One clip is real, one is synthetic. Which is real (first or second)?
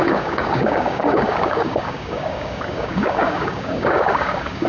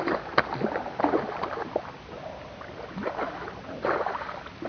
second